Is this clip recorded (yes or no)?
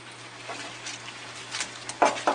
yes